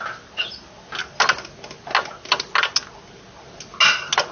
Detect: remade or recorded recorded